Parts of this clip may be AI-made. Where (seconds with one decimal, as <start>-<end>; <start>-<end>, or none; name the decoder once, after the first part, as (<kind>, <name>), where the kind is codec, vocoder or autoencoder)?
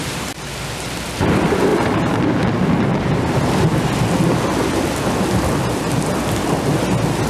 1.7-3.1 (vocoder, BigVGAN v2)